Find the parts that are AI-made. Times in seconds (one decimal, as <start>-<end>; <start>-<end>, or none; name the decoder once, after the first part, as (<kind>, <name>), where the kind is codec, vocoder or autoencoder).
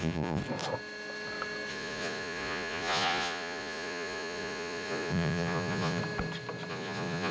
0.0-0.4 (vocoder, Vocos); 1.7-6.0; 6.7-7.3